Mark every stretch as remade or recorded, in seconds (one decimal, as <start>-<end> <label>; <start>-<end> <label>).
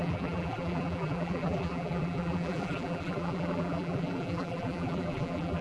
0.0-5.6 remade